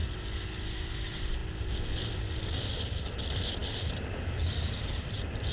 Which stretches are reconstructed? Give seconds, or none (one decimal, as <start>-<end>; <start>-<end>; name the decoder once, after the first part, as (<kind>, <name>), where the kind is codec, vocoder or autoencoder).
0.5-1.4 (vocoder, BigVGAN v2); 2.8-5.5